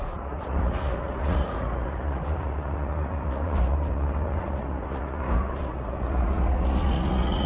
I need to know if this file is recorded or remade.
remade